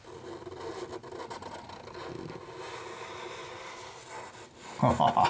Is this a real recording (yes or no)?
yes